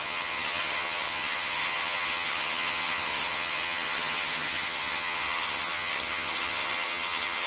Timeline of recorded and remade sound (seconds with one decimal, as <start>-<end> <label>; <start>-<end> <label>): 0.0-7.5 remade